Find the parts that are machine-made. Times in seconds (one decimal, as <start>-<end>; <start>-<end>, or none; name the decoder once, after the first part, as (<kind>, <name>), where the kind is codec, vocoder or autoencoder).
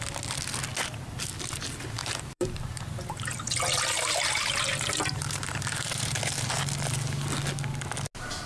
2.0-6.5 (vocoder, BigVGAN v2)